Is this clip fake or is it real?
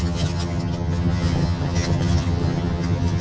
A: fake